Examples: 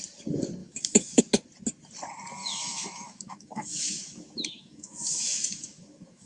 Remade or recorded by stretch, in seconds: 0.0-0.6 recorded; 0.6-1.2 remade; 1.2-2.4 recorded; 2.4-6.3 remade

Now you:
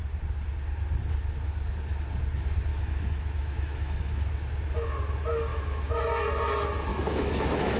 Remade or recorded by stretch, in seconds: 0.0-2.7 recorded; 2.7-4.2 remade; 4.2-5.5 recorded; 5.5-6.0 remade; 6.0-6.9 recorded; 6.9-7.8 remade